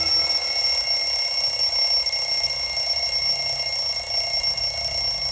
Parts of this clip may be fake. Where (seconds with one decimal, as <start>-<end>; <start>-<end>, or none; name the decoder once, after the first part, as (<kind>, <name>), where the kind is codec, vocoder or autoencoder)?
none